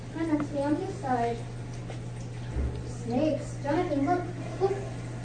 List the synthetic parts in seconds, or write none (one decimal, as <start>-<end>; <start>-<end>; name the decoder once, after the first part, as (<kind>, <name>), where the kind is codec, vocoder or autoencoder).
none